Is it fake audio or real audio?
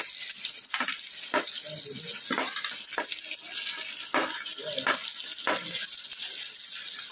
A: real